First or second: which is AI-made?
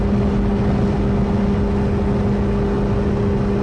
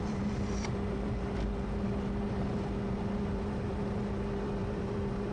second